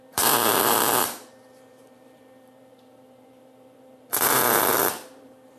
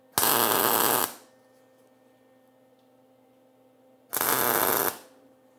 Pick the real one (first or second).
second